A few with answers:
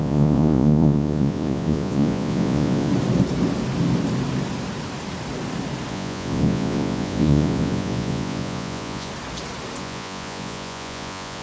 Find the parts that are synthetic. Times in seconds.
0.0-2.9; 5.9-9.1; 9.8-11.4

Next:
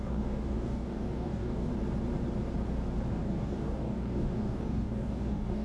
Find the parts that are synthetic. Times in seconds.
0.0-1.7; 3.1-5.6

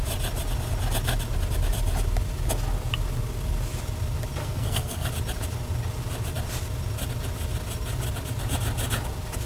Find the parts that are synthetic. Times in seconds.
4.4-5.1

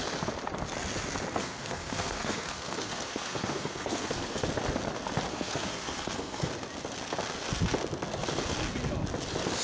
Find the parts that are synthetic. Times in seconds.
1.4-4.4; 5.3-6.5